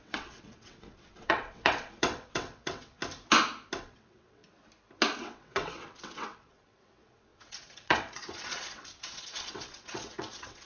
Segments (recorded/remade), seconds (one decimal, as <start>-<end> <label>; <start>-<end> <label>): 0.0-3.0 remade; 3.0-3.8 recorded; 3.8-4.4 remade; 4.4-5.2 recorded; 5.2-10.7 remade